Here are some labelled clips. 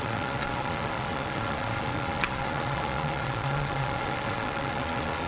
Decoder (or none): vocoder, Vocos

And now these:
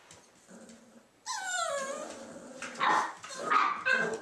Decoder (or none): none